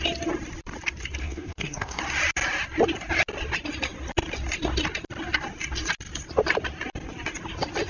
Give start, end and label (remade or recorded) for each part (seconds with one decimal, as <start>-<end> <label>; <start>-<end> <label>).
0.0-1.2 recorded; 1.2-2.0 remade; 2.0-7.9 recorded